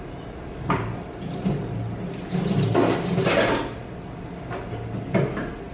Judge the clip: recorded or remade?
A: recorded